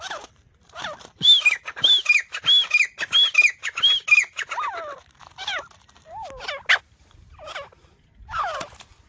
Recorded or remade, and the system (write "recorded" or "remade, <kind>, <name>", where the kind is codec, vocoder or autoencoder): recorded